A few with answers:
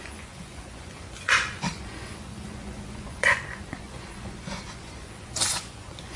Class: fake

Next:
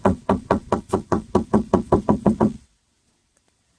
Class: fake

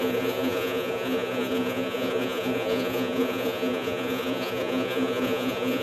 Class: fake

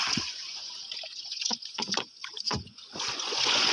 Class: fake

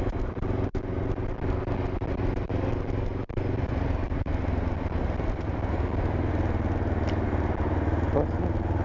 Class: real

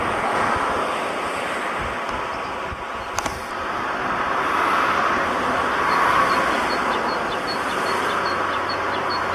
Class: real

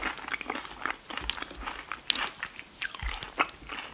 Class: real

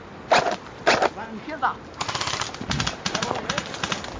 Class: real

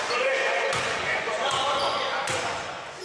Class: fake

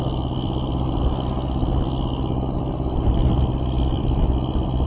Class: real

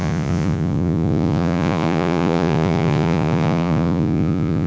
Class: fake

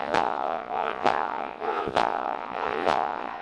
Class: fake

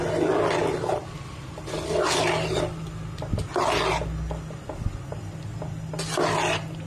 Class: real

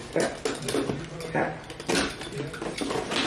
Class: real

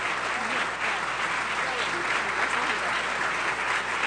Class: real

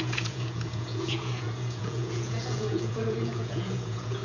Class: fake